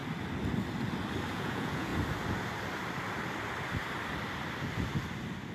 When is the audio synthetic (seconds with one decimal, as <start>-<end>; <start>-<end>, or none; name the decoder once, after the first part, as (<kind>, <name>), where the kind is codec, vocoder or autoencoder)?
1.3-1.9 (vocoder, Vocos)

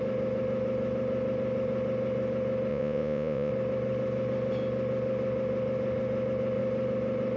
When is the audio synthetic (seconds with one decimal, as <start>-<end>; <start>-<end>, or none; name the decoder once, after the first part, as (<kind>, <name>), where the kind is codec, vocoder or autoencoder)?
2.7-3.5 (vocoder, Vocos)

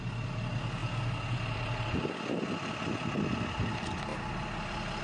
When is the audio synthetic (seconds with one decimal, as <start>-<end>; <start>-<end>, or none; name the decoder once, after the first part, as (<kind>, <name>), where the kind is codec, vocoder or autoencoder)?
none

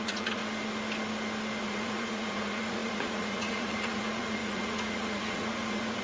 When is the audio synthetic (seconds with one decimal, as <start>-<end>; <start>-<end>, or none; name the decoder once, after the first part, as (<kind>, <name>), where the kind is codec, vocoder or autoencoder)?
0.0-0.4 (vocoder, Vocos); 1.6-6.0